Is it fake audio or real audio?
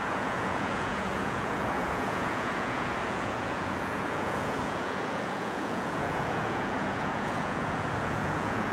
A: fake